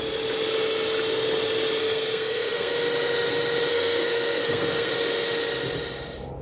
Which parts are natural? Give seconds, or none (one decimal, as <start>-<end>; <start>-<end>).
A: 0.0-1.8; 2.7-3.7; 4.9-6.4